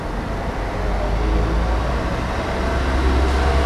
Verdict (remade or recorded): recorded